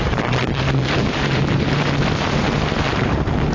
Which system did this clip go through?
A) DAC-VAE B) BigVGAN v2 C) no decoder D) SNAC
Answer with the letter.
B